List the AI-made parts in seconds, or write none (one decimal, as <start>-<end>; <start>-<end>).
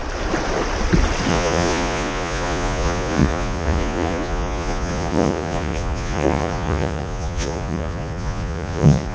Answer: 1.3-9.1